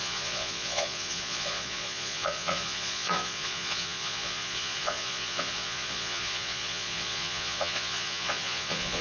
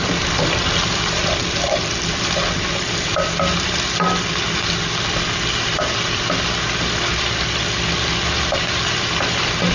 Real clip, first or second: second